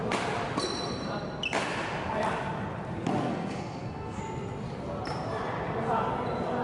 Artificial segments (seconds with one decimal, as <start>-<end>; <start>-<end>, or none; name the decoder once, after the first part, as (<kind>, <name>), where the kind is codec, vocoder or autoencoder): 3.2-4.2 (codec, SNAC)